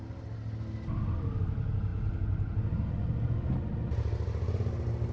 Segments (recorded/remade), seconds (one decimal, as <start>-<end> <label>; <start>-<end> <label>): 0.0-5.1 recorded